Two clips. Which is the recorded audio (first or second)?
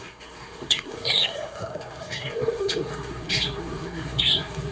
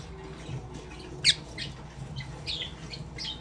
second